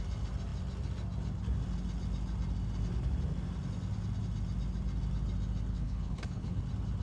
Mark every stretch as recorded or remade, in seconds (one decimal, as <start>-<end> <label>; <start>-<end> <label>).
0.0-5.7 recorded; 5.7-6.6 remade; 6.6-7.0 recorded